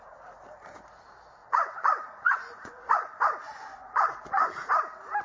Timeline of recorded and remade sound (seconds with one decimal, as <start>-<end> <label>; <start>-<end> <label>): 0.0-1.4 recorded; 1.4-4.5 remade; 4.5-5.2 recorded